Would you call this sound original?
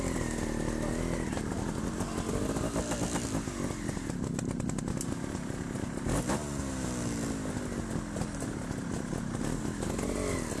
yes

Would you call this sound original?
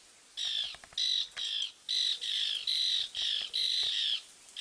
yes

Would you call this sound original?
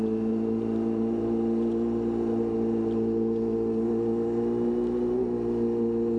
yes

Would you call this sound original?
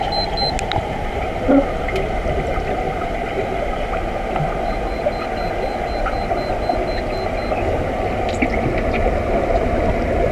yes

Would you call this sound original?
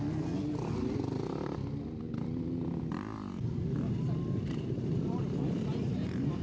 yes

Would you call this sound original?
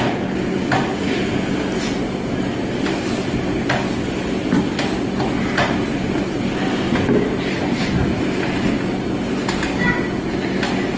yes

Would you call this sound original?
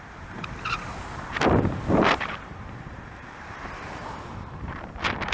no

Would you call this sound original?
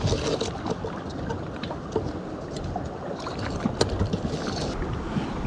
yes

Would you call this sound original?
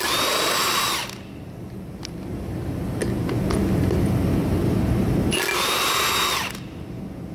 yes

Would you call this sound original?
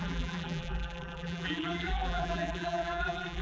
no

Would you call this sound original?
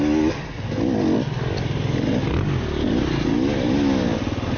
yes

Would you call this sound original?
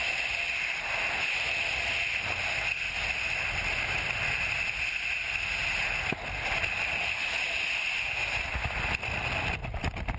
yes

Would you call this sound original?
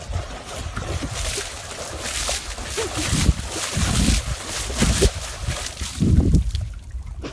yes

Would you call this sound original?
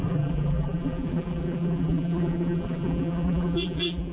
no